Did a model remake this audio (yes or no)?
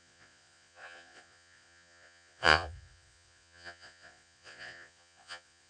yes